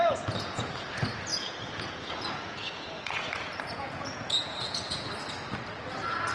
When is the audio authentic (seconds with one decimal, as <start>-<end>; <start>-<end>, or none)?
0.9-1.3; 5.1-6.3